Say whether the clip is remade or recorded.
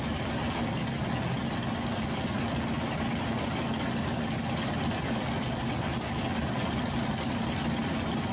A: recorded